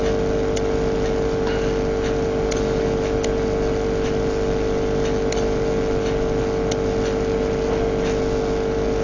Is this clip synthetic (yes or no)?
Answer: no